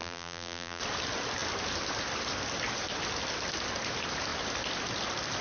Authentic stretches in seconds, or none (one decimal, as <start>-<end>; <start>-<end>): 0.8-5.4